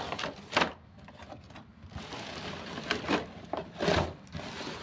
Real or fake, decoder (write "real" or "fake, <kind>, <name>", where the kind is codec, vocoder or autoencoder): real